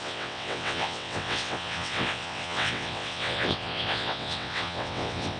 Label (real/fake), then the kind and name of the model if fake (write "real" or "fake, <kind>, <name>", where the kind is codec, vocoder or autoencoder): fake, vocoder, WaveNeXt